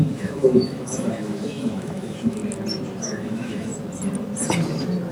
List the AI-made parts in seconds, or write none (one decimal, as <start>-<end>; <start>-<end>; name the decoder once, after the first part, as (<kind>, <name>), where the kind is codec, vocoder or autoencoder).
0.0-2.4 (autoencoder, DAC-VAE); 3.0-3.7